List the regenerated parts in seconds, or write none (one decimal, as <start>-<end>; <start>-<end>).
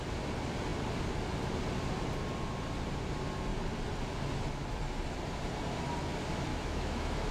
6.5-7.3